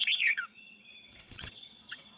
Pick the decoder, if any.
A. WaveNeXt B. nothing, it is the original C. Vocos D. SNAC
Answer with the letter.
A